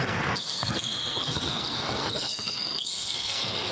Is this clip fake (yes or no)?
yes